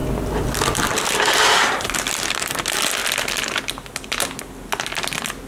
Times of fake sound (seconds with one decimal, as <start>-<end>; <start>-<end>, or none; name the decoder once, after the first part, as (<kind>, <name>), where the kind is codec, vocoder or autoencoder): none